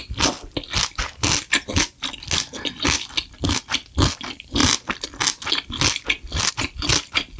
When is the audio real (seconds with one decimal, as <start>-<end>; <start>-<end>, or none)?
0.0-7.4